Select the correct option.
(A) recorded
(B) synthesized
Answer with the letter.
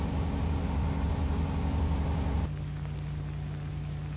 A